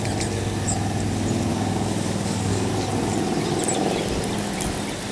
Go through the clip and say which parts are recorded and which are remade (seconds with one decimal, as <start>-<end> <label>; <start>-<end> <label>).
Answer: 0.0-1.5 recorded; 1.5-2.7 remade; 2.7-5.1 recorded